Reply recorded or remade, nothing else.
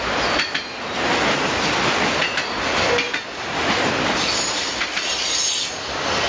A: recorded